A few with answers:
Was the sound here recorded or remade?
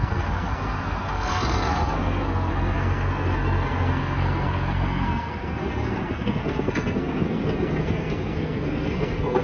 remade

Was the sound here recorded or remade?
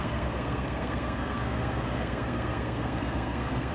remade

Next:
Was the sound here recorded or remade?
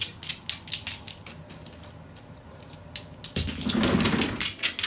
recorded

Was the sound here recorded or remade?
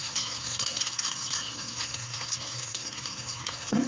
remade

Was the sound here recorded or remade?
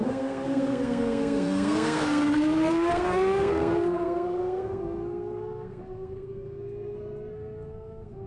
remade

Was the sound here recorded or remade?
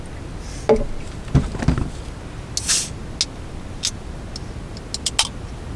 recorded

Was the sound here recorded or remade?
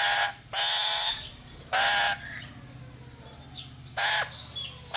recorded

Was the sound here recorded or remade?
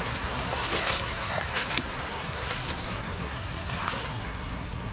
remade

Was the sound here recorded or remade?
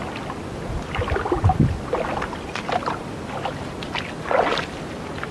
recorded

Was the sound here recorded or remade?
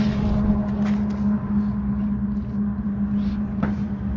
recorded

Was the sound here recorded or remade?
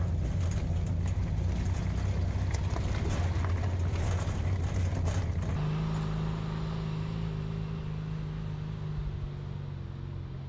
recorded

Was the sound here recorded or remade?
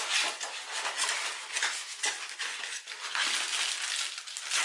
recorded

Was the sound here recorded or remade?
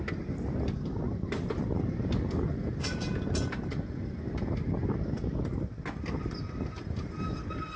recorded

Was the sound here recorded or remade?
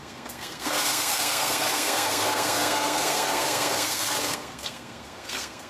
remade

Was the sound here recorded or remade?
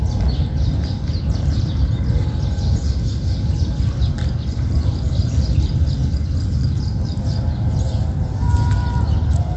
recorded